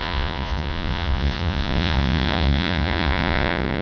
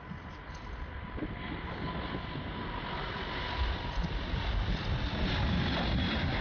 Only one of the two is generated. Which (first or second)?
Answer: first